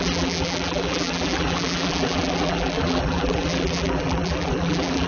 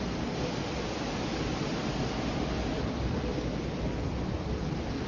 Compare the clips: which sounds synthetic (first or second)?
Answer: first